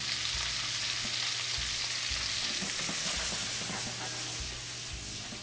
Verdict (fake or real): real